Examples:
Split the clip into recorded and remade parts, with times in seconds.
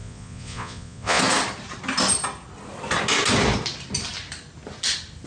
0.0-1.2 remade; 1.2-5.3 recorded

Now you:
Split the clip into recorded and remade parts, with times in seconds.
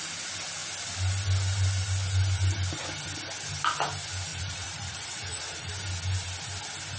0.0-4.3 recorded; 4.3-5.7 remade; 5.7-7.0 recorded